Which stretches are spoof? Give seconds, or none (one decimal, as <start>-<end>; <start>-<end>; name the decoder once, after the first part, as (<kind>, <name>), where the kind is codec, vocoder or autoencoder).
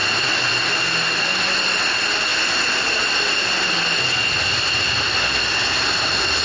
0.0-0.5 (vocoder, Vocos)